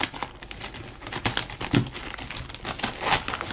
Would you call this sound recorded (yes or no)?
yes